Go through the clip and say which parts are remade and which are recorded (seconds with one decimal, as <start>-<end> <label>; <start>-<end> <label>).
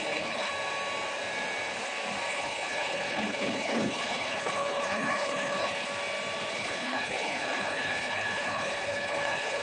0.0-0.5 remade; 0.5-2.3 recorded; 2.3-5.9 remade; 5.9-6.5 recorded; 6.5-9.6 remade